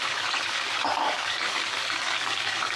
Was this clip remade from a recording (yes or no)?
yes